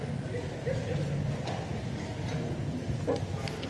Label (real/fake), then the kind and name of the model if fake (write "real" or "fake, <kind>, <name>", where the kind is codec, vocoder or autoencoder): real